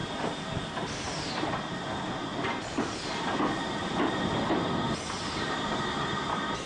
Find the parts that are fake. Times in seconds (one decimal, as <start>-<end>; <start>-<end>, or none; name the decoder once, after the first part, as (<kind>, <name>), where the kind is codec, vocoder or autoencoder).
none